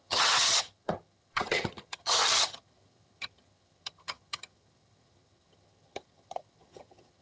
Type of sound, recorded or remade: remade